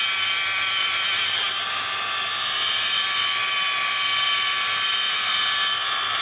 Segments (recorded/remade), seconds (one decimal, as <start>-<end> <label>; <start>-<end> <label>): 0.0-4.1 recorded; 4.1-5.3 remade; 5.3-6.2 recorded